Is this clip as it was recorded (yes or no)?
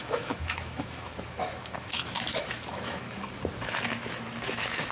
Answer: no